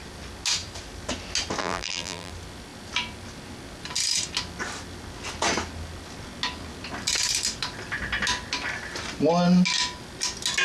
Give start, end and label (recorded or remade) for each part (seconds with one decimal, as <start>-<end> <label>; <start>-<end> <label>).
0.0-1.6 recorded; 1.6-2.3 remade; 2.3-10.6 recorded